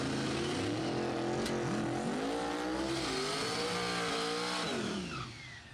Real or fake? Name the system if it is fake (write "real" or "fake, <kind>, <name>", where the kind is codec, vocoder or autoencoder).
real